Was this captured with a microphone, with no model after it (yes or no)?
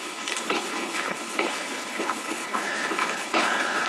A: no